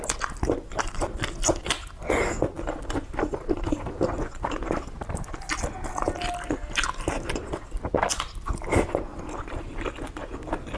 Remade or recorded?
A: recorded